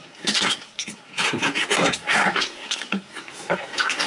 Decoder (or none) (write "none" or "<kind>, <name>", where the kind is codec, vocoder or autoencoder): codec, SNAC